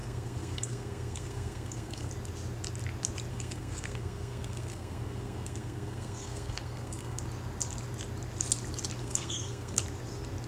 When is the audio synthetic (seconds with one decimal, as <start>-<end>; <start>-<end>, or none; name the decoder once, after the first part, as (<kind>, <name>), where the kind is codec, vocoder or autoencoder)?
0.0-2.1 (codec, SNAC); 3.3-7.2; 9.0-9.8